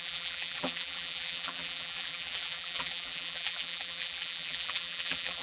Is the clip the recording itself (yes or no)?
no